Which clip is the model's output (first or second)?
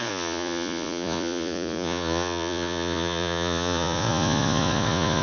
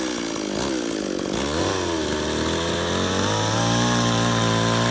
first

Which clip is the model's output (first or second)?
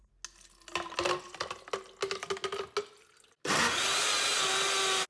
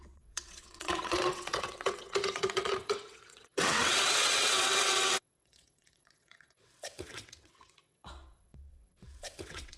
second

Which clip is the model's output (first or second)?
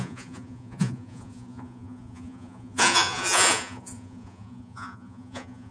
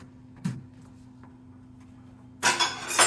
first